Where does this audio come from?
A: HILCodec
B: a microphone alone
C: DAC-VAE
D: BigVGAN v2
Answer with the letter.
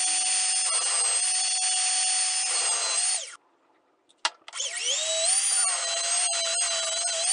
B